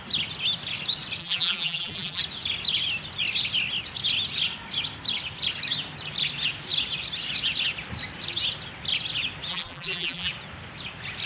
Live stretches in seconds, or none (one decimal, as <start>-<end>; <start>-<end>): 0.0-1.2; 2.2-9.5; 10.3-11.3